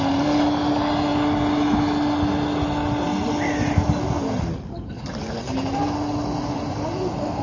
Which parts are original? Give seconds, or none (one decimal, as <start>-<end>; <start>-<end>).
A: 0.0-7.4